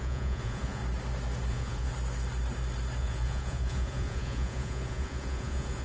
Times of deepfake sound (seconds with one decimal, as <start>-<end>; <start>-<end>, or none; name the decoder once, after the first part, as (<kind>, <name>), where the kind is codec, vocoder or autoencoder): 0.0-0.8 (vocoder, Vocos); 1.5-1.9; 3.0-5.8